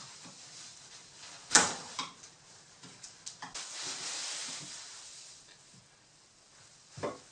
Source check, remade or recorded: recorded